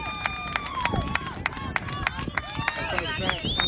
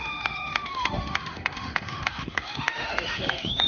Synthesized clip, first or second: second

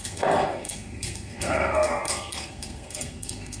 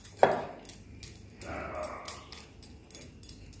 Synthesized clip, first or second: first